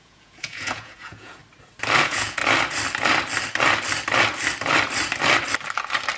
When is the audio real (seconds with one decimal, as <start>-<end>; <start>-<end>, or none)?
1.4-2.0; 2.4-6.2